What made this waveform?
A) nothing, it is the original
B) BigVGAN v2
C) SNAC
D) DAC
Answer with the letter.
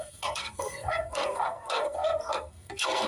C